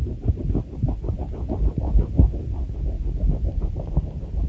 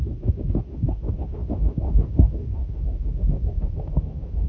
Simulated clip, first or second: second